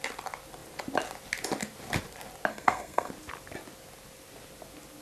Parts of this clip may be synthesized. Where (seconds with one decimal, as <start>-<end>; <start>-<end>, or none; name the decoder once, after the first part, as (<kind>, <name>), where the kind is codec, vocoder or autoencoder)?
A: 2.5-3.1 (codec, SNAC)